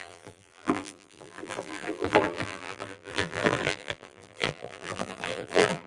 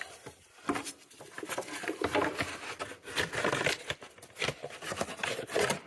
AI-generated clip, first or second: first